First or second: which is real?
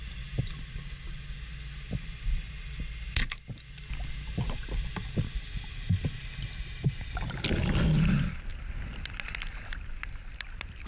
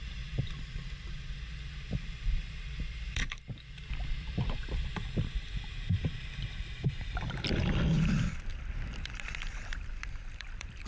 first